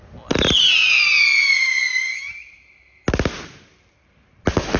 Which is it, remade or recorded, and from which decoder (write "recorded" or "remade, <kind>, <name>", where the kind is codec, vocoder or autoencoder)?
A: recorded